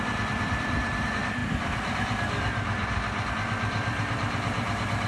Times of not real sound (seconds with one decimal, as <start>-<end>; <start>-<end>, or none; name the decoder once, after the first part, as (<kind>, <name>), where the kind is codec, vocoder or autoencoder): 0.0-5.1 (vocoder, BigVGAN v2)